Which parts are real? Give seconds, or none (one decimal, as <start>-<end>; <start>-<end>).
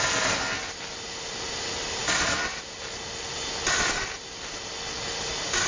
0.0-5.7